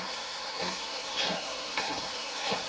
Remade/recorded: remade